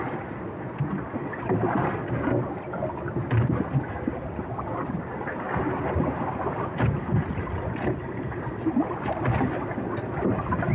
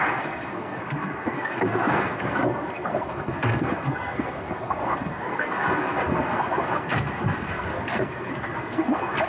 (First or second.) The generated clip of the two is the second